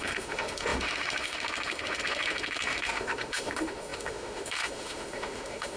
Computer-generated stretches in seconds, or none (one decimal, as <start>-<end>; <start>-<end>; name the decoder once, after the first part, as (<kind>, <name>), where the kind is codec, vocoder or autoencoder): 0.0-5.8 (autoencoder, DAC-VAE)